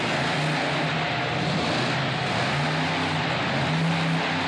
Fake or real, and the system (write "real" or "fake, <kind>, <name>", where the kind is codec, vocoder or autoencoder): real